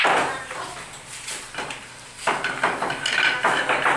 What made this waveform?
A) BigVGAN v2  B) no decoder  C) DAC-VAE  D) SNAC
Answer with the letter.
B